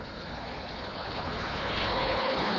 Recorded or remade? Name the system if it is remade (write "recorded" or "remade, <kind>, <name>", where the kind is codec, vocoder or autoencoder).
remade, codec, HILCodec